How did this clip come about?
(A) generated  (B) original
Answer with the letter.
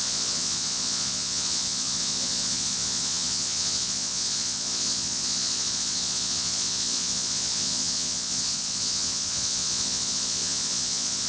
A